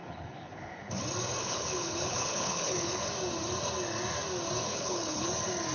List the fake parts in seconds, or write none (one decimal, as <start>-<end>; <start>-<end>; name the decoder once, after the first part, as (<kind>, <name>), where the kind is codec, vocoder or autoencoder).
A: 0.0-0.9 (codec, HILCodec); 1.4-3.1; 4.7-5.3